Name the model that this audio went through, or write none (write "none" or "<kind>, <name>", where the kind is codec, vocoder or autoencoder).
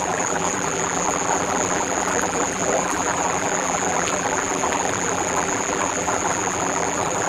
vocoder, BigVGAN v2